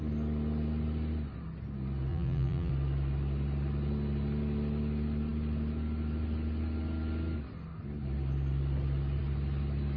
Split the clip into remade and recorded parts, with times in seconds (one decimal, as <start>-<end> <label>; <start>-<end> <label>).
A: 0.0-2.1 recorded; 2.1-2.7 remade; 2.7-10.0 recorded